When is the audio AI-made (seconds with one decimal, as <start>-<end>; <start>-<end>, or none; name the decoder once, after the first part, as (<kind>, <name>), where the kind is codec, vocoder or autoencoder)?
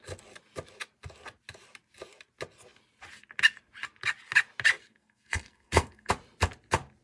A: 4.8-6.1 (codec, SNAC)